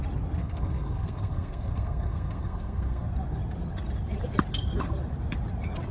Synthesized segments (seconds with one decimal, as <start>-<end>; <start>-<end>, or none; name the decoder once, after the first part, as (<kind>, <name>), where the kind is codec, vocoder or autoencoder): 0.4-3.1 (codec, SNAC)